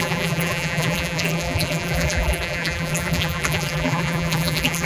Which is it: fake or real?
fake